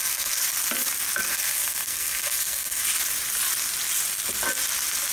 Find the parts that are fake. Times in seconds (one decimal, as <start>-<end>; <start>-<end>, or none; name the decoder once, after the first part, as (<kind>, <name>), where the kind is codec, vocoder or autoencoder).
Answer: 0.0-0.4 (codec, SNAC); 1.3-2.8